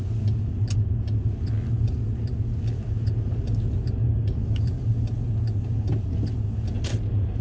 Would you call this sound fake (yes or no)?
no